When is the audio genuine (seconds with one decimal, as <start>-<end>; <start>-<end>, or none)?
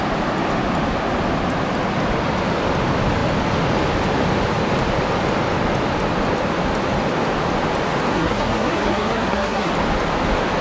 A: 0.0-8.1; 9.7-10.6